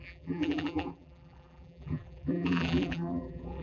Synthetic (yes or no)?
yes